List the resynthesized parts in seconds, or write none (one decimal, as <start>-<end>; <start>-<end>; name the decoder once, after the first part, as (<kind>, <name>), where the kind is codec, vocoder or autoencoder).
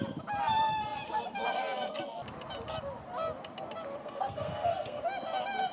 4.0-5.0 (codec, SNAC)